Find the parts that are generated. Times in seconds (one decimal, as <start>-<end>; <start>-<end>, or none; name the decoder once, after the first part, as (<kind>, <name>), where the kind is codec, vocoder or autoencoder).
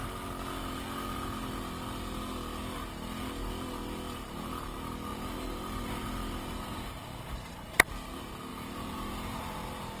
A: 5.1-7.9 (vocoder, BigVGAN v2); 8.5-9.4